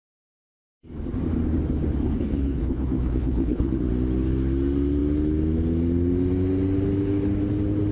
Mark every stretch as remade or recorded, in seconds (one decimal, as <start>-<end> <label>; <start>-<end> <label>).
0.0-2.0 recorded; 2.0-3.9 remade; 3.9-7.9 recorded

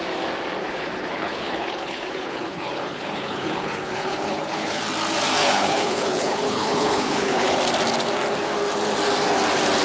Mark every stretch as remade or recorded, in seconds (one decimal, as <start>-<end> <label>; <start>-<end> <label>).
0.0-0.6 recorded; 0.6-4.8 remade; 4.8-5.4 recorded; 5.4-7.6 remade; 7.6-9.8 recorded

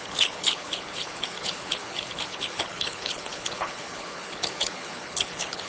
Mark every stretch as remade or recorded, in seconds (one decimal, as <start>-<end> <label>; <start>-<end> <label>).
0.0-5.7 remade

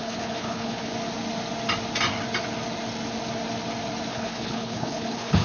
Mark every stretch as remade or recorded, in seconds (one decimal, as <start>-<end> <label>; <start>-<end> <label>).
0.0-0.9 remade; 0.9-4.1 recorded; 4.1-5.4 remade